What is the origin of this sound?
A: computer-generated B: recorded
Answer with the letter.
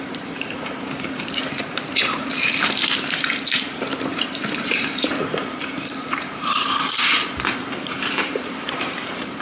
A